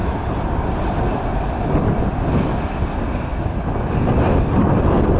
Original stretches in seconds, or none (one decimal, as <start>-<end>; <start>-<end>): 0.9-5.2